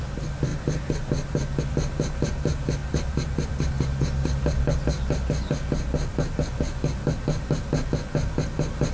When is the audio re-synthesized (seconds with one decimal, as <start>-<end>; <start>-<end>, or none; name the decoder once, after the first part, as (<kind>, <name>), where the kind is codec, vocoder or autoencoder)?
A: none